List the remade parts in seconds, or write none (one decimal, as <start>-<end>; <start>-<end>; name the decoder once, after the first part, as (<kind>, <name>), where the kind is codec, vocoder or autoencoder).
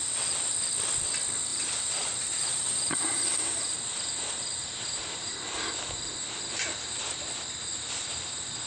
1.5-5.3 (vocoder, BigVGAN v2)